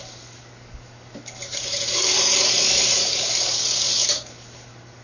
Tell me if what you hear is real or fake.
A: fake